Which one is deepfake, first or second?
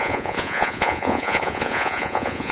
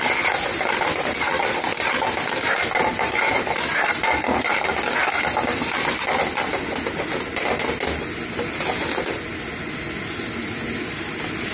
first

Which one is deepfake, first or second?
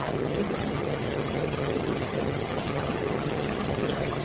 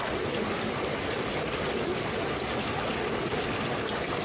first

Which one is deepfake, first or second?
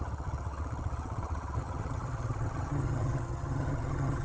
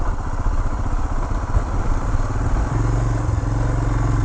first